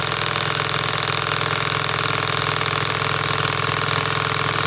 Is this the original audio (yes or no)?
yes